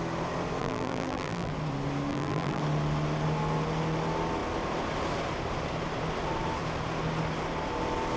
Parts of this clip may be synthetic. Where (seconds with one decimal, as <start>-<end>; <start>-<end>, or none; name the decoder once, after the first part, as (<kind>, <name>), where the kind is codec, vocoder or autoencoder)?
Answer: 0.6-1.5 (vocoder, BigVGAN v2); 2.1-2.6